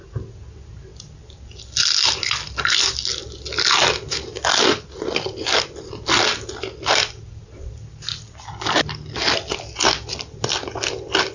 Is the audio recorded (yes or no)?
yes